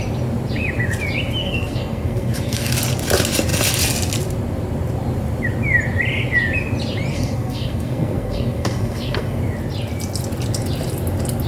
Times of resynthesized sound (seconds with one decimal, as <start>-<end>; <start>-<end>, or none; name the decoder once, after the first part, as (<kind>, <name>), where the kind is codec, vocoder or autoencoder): 1.4-2.7 (codec, SNAC); 7.1-9.4